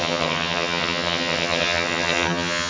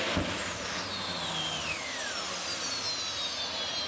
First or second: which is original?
second